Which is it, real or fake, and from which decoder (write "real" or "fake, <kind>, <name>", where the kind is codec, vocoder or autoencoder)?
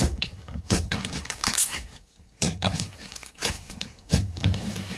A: fake, codec, SNAC